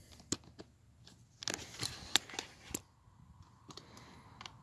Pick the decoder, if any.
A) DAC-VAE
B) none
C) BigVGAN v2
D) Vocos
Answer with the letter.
B